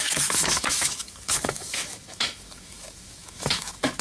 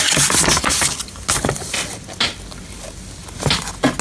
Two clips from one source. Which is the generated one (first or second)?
first